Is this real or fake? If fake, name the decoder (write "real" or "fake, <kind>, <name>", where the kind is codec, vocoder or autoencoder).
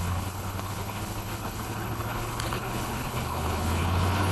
fake, codec, HILCodec